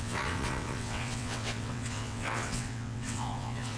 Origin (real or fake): fake